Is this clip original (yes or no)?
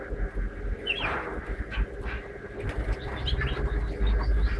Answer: yes